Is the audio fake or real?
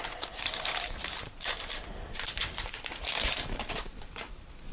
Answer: fake